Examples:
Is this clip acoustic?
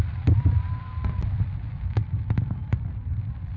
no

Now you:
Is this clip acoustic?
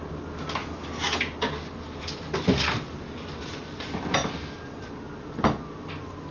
yes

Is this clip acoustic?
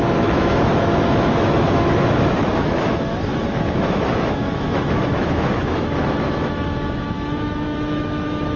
no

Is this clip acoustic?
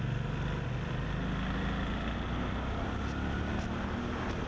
yes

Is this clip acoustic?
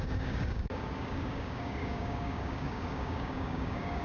no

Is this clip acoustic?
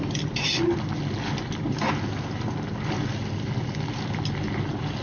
yes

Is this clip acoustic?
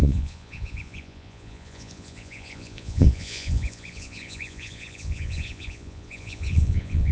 no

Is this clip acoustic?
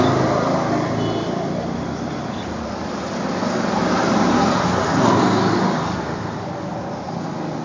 yes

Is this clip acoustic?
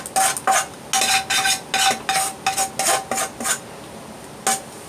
yes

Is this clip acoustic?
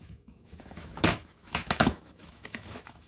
no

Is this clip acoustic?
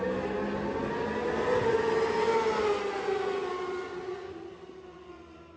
yes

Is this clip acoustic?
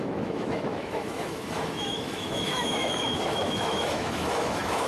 no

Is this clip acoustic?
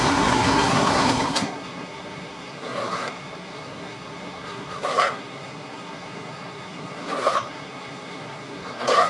no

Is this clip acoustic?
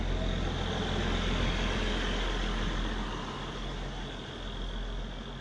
yes